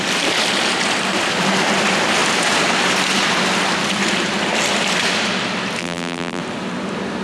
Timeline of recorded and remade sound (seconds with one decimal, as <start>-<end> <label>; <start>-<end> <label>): 0.0-5.8 recorded; 5.8-6.4 remade; 6.4-7.2 recorded